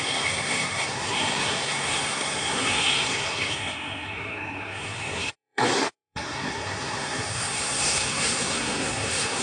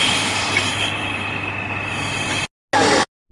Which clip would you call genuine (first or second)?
second